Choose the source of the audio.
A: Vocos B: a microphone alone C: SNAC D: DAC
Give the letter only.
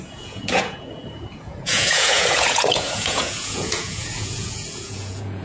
A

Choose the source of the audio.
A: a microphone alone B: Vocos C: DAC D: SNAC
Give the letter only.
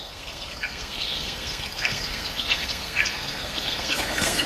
D